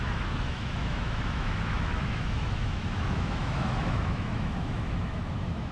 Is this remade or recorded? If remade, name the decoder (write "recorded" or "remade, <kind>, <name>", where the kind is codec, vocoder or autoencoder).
remade, autoencoder, DAC-VAE